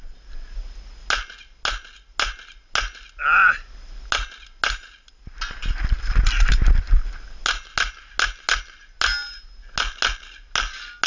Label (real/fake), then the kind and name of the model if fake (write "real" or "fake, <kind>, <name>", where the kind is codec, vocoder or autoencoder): real